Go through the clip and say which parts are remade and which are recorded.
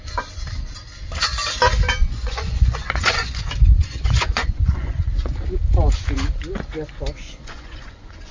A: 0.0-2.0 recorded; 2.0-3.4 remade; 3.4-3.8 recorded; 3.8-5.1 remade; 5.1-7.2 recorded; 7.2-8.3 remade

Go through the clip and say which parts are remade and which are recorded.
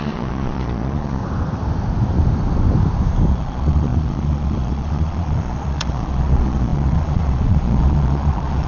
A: 0.0-1.2 remade; 1.2-3.3 recorded; 3.3-8.7 remade